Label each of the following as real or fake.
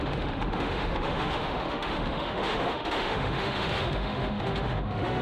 fake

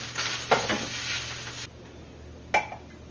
real